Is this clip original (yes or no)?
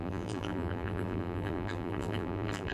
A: no